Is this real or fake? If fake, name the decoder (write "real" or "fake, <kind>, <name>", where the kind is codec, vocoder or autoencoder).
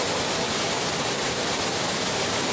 real